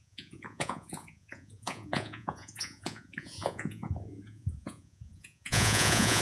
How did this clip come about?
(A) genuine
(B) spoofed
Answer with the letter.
B